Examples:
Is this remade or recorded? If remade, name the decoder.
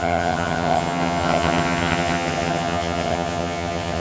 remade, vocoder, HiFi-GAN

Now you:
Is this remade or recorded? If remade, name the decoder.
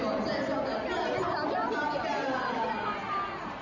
recorded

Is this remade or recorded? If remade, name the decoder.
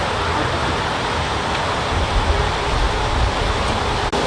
recorded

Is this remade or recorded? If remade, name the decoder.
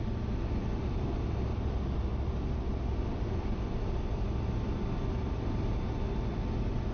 recorded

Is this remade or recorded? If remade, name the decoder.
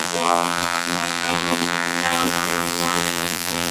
remade, vocoder, BigVGAN v2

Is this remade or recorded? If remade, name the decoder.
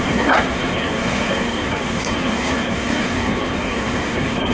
remade, codec, SNAC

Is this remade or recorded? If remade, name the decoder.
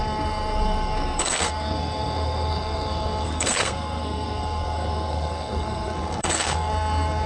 remade, codec, SNAC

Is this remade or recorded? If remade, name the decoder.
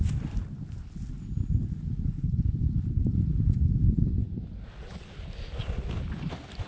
recorded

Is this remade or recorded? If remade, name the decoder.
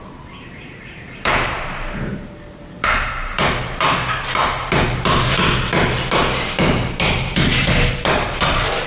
remade, vocoder, BigVGAN v2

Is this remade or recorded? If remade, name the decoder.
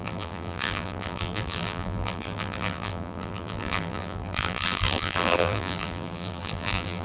remade, vocoder, BigVGAN v2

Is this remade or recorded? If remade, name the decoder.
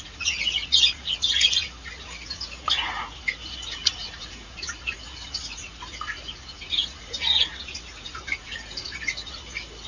remade, vocoder, Vocos